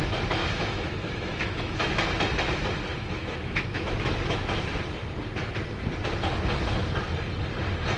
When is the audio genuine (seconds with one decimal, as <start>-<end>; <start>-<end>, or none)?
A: 0.0-0.4; 2.2-2.9; 4.6-8.0